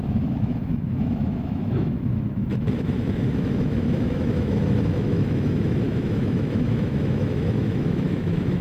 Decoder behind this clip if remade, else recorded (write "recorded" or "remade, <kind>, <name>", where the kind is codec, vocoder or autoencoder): remade, autoencoder, DAC-VAE